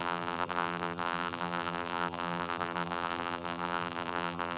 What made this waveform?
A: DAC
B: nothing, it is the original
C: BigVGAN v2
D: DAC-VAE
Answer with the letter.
C